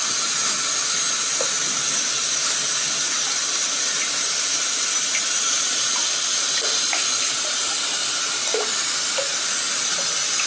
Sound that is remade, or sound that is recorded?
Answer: recorded